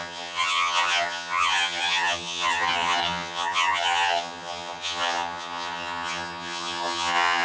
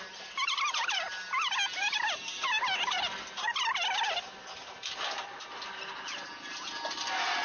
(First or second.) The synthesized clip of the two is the first